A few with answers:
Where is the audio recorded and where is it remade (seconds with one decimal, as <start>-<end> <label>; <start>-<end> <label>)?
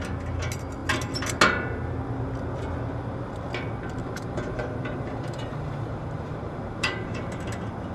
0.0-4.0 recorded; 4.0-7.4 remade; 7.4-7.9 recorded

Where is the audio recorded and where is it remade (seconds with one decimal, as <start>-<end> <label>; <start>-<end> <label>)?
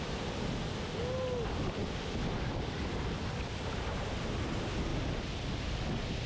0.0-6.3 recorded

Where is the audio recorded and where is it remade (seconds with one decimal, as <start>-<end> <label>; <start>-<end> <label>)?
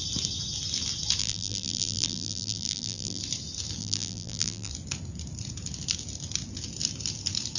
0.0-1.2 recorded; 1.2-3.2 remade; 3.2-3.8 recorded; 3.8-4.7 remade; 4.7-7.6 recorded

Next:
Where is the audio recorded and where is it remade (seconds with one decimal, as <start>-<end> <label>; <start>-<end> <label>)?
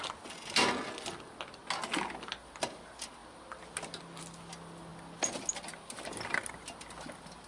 0.0-7.5 recorded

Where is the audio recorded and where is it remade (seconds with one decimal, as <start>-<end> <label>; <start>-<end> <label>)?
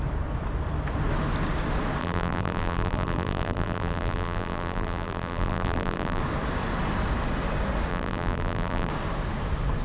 0.0-2.0 recorded; 2.0-6.2 remade; 6.2-7.9 recorded; 7.9-8.9 remade; 8.9-9.8 recorded